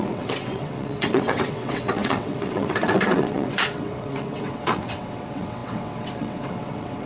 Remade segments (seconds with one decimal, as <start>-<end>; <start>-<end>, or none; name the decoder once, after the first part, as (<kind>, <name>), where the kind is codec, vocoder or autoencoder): 0.0-7.1 (vocoder, WaveNeXt)